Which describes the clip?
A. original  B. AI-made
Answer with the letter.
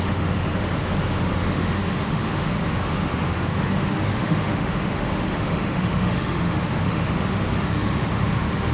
B